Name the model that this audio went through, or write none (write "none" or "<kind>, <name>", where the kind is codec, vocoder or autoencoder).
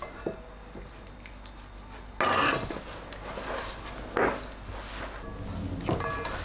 none